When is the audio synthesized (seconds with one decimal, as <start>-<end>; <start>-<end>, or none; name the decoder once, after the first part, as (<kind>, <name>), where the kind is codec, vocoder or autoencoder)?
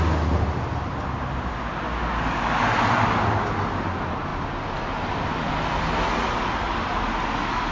none